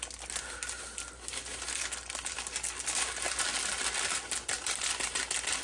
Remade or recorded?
recorded